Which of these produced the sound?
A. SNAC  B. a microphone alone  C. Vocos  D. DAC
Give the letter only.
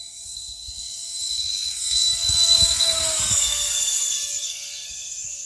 A